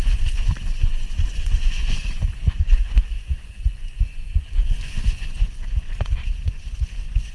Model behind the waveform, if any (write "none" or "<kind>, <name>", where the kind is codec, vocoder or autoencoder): vocoder, Vocos